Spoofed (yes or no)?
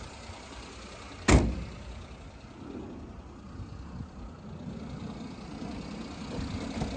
no